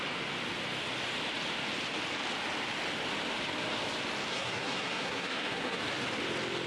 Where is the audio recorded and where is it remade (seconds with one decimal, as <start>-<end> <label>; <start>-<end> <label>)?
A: 0.0-4.3 recorded; 4.3-5.8 remade; 5.8-6.7 recorded